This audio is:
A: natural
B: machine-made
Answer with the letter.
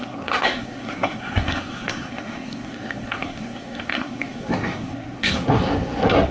B